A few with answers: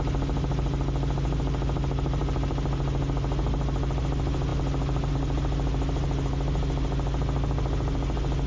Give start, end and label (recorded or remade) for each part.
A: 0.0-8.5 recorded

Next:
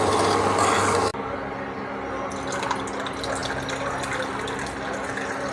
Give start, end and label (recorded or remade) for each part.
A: 0.0-5.5 recorded

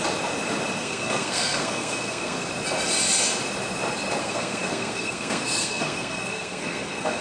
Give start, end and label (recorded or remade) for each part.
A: 0.0-0.8 recorded; 0.8-2.5 remade; 2.5-4.2 recorded; 4.2-7.2 remade